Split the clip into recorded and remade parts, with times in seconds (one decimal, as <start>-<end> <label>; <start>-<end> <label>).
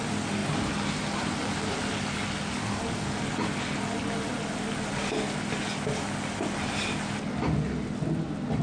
0.0-8.6 recorded